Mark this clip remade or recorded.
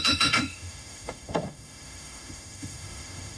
remade